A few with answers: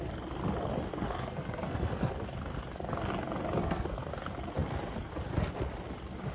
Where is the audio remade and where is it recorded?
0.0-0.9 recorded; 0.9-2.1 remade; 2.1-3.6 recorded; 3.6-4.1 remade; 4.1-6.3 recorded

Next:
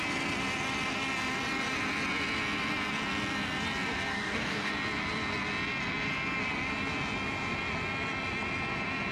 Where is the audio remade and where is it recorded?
0.0-4.1 recorded; 4.1-4.7 remade; 4.7-9.1 recorded

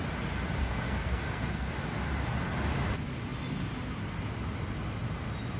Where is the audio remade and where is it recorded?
0.0-0.6 recorded; 0.6-1.7 remade; 1.7-5.6 recorded